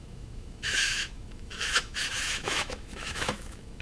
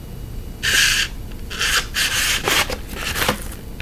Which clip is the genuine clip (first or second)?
second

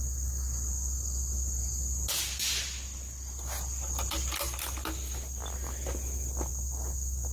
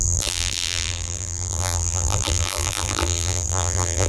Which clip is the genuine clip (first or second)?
first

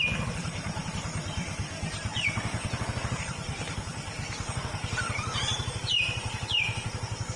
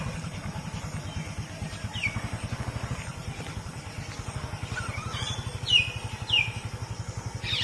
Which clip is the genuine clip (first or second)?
second